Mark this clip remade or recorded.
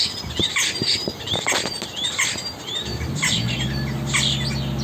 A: recorded